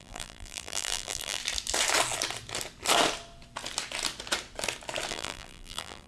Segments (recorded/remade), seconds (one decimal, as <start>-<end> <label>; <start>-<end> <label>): 0.0-1.4 remade; 1.4-5.1 recorded; 5.1-6.1 remade